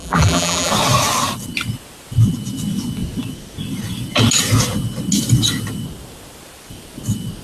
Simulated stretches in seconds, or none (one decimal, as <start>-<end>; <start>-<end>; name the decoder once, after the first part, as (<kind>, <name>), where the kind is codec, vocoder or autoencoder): 0.0-0.7 (vocoder, BigVGAN v2)